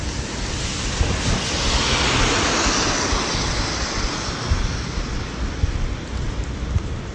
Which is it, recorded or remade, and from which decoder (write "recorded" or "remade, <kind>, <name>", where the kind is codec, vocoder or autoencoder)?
recorded